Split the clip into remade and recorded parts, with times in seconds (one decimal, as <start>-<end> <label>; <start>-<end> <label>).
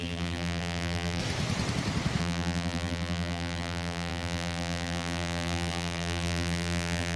0.0-1.2 remade; 1.2-2.2 recorded; 2.2-7.2 remade